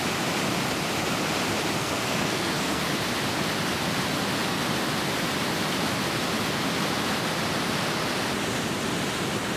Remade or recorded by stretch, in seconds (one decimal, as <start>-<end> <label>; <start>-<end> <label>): 0.0-1.8 recorded; 1.8-2.8 remade; 2.8-9.6 recorded